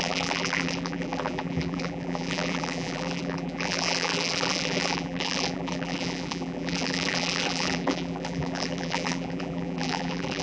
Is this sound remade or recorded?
remade